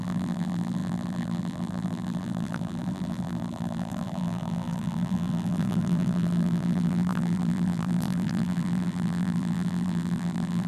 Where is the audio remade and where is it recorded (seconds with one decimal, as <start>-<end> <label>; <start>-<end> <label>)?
0.0-10.7 remade

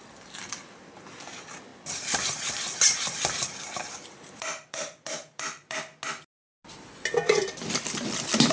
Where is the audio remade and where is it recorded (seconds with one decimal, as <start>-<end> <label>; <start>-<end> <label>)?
0.0-1.7 remade; 1.7-4.1 recorded; 4.1-5.9 remade; 5.9-7.2 recorded; 7.2-8.5 remade

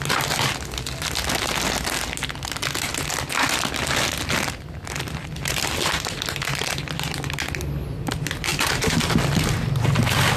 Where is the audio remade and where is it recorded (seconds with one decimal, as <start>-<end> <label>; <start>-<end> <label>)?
0.0-10.4 recorded

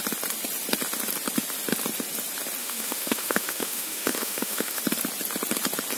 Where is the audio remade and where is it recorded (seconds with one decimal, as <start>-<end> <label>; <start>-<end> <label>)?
0.0-2.6 recorded; 2.6-4.8 remade; 4.8-6.0 recorded

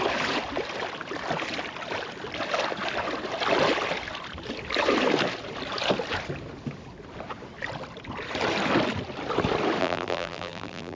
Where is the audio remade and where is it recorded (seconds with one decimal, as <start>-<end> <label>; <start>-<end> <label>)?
0.0-9.8 recorded; 9.8-11.0 remade

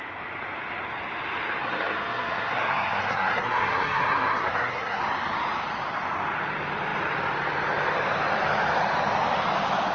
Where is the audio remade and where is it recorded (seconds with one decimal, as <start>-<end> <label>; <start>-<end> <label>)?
0.0-1.6 recorded; 1.6-5.0 remade; 5.0-9.9 recorded

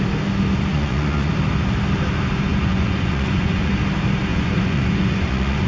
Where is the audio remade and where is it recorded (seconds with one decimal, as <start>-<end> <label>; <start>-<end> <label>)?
0.0-0.7 recorded; 0.7-1.3 remade; 1.3-2.5 recorded; 2.5-3.7 remade; 3.7-4.3 recorded; 4.3-5.7 remade